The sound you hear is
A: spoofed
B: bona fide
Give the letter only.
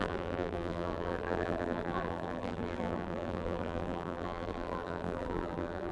A